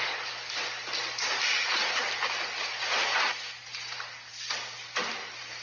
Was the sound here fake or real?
real